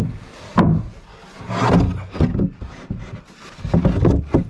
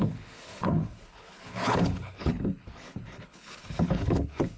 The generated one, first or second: second